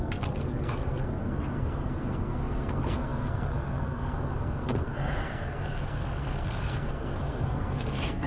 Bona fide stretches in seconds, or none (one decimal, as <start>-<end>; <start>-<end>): none